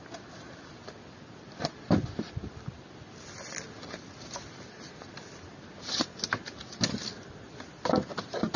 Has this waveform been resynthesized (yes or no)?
no